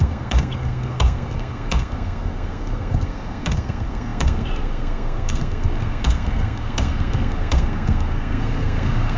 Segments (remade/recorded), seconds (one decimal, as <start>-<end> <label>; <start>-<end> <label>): 0.0-9.2 remade